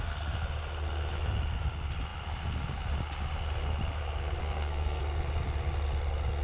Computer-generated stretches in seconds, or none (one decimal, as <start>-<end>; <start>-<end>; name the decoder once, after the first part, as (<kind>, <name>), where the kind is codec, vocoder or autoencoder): 4.4-5.0 (codec, SNAC)